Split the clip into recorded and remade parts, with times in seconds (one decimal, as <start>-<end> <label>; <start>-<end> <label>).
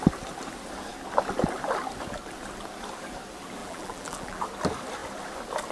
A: 0.0-3.6 recorded; 3.6-4.4 remade; 4.4-5.7 recorded